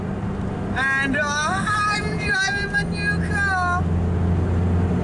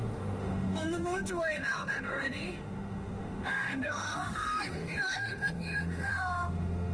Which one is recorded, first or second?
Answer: first